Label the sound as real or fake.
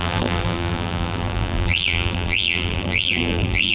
fake